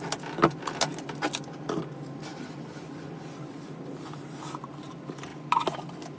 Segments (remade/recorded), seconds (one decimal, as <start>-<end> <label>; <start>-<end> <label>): 0.0-6.2 recorded